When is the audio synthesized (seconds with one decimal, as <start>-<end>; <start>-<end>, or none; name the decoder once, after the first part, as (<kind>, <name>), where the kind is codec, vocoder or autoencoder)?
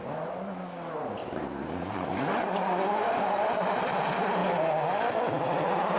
1.2-2.1 (vocoder, BigVGAN v2)